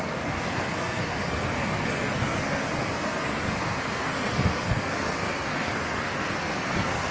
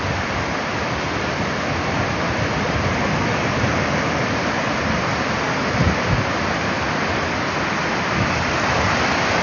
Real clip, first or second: second